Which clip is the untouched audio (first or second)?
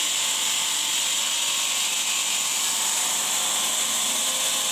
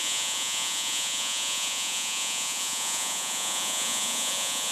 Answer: first